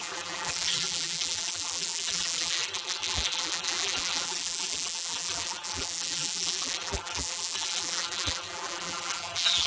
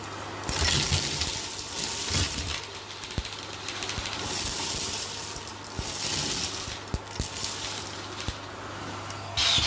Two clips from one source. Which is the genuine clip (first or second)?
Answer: second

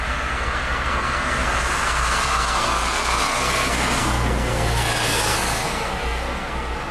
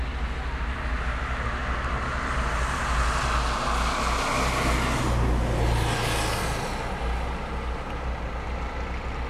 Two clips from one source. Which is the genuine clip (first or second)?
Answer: second